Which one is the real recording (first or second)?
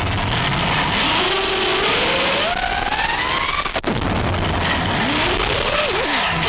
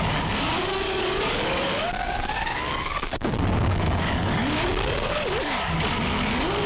first